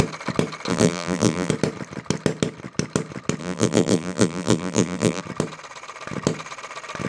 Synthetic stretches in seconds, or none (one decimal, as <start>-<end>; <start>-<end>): 0.7-1.5; 3.4-5.2